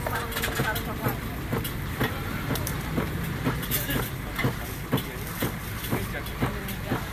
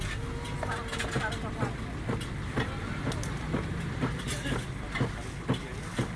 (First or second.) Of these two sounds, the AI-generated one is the first